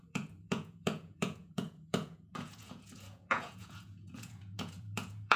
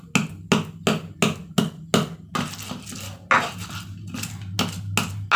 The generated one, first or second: first